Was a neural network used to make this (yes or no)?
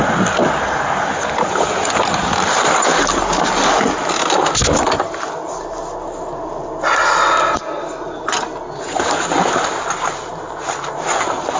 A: no